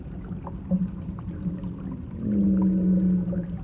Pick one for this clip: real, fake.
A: real